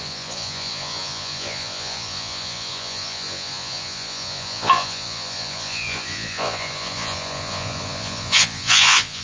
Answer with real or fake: fake